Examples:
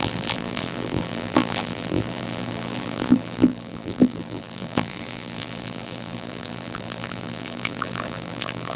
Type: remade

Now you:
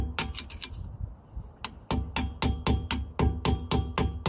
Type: recorded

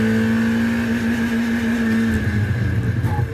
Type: recorded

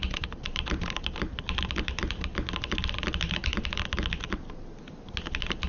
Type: recorded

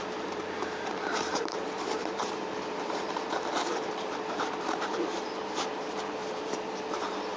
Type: remade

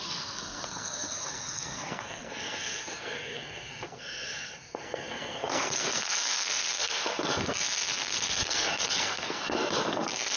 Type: remade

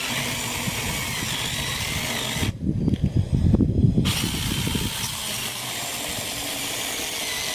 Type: recorded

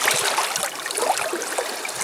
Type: recorded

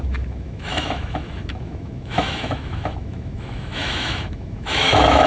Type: remade